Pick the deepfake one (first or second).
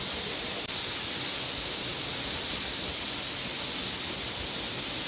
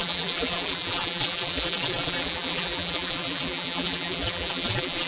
second